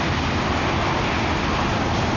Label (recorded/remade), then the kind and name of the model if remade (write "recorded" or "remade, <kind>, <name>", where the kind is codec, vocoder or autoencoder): recorded